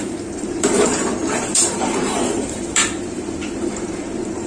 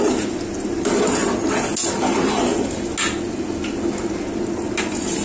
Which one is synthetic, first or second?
first